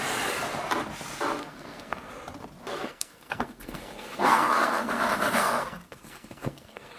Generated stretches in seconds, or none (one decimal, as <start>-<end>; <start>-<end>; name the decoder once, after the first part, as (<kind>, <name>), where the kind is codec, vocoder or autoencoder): 1.4-2.1 (codec, SNAC); 2.7-7.0